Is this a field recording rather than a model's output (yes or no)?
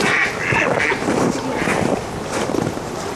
no